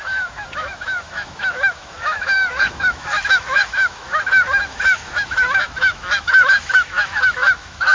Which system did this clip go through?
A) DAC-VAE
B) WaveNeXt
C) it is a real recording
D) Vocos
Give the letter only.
A